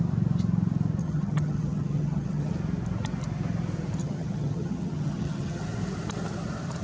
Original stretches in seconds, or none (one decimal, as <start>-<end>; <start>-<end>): 0.0-1.0; 2.5-4.0; 5.6-6.8

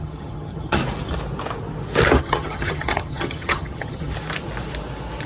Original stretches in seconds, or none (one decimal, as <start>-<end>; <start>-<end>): 0.8-2.2; 4.1-5.3

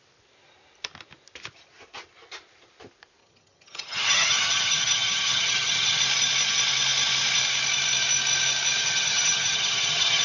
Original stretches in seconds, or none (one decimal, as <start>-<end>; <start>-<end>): 0.0-3.2; 6.0-8.8

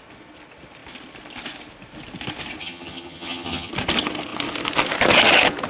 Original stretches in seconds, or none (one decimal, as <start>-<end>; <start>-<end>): 0.0-2.6; 3.7-5.7

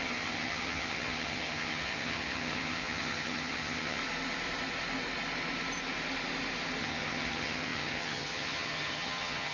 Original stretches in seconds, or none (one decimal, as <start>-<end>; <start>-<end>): 4.0-6.8

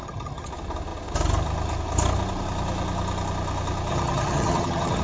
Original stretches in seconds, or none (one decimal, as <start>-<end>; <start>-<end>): 0.5-3.9

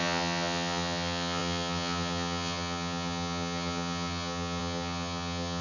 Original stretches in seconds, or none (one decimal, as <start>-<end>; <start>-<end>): none

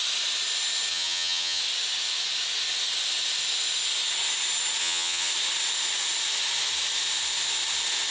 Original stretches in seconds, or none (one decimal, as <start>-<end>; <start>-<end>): 0.0-0.9; 1.6-4.8; 5.3-8.1